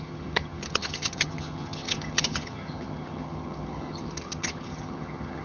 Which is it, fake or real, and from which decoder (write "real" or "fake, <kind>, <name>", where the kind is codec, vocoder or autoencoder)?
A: fake, vocoder, HiFi-GAN